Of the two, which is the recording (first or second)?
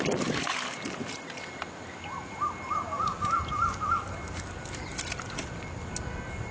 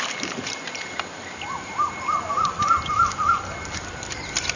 first